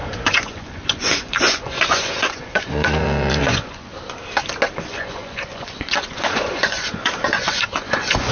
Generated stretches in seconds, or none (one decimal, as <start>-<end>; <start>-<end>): 0.0-3.9; 4.8-8.3